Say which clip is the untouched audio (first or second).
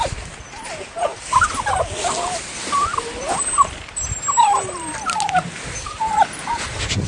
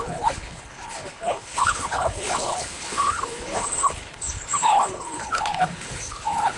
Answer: first